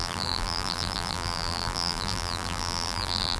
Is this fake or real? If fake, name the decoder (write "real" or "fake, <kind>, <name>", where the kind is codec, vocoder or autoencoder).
fake, vocoder, BigVGAN v2